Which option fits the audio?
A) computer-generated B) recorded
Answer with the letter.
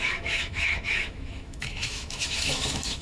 A